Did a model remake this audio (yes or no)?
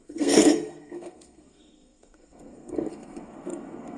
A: yes